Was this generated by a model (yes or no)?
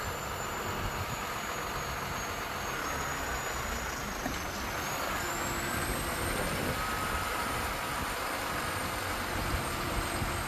no